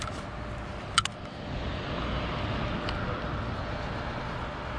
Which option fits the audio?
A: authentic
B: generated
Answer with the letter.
A